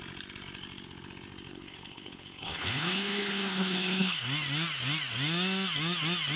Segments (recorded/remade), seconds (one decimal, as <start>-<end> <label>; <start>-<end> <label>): 0.0-1.5 recorded; 1.5-4.2 remade; 4.2-6.4 recorded